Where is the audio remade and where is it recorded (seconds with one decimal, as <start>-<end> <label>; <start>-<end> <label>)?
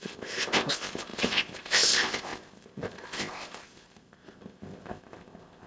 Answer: 0.0-5.7 remade